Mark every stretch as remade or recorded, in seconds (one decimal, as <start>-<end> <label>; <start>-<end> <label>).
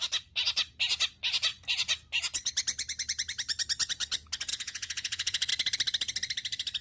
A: 0.0-4.5 recorded; 4.5-5.5 remade; 5.5-6.8 recorded